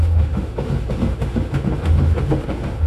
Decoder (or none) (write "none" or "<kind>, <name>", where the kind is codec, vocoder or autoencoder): autoencoder, DAC-VAE